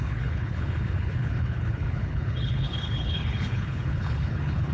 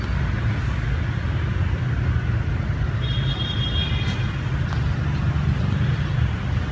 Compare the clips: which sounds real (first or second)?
second